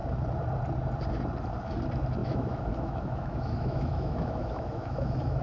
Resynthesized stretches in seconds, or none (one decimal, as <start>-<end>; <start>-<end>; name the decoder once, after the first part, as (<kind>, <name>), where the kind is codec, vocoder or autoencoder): 2.2-5.4 (autoencoder, DAC-VAE)